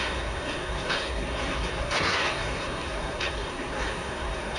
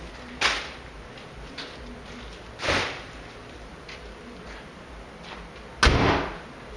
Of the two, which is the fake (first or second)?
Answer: first